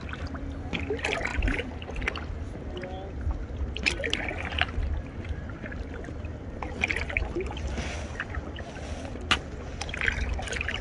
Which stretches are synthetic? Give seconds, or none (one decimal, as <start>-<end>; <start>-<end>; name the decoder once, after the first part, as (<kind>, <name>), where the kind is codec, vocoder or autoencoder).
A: none

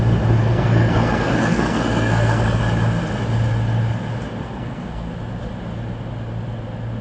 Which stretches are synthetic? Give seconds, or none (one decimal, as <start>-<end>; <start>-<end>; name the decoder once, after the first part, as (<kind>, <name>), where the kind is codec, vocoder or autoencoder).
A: 0.4-2.6 (codec, SNAC); 4.4-5.1

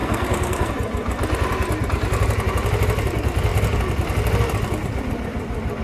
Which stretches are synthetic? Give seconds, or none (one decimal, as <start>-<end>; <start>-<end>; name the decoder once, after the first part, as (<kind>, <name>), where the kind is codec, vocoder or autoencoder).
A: 0.0-0.7 (codec, SNAC)

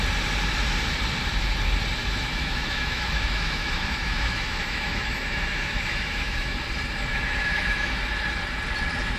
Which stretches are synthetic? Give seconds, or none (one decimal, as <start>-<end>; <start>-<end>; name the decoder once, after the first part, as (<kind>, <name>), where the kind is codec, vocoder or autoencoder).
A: 2.0-6.6 (autoencoder, DAC-VAE); 7.1-7.9